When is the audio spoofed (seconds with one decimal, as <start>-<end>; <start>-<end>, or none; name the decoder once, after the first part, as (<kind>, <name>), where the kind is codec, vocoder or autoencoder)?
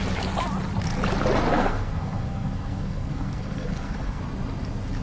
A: 1.5-4.2 (codec, SNAC)